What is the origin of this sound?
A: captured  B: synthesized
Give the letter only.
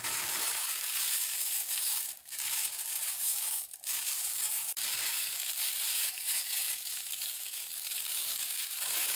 B